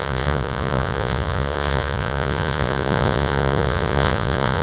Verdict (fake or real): fake